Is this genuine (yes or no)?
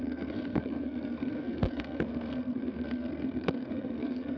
no